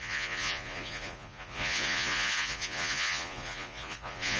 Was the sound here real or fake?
fake